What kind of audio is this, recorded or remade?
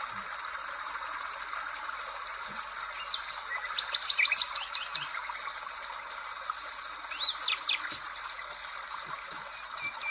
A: recorded